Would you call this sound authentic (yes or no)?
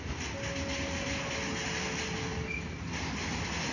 yes